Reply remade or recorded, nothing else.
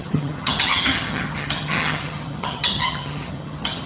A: remade